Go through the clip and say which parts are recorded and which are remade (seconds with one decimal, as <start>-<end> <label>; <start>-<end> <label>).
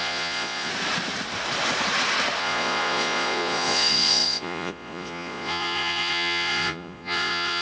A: 0.0-0.7 remade; 0.7-2.4 recorded; 2.4-7.6 remade